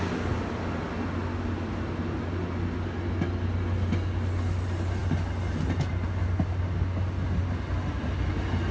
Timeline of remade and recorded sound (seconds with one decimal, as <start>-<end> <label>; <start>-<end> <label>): 0.0-8.7 recorded